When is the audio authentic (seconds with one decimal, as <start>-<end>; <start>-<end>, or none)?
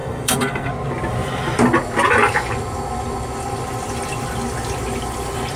0.7-5.6